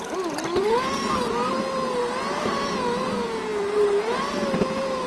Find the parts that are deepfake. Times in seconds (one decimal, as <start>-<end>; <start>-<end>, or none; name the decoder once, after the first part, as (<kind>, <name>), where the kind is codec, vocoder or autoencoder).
none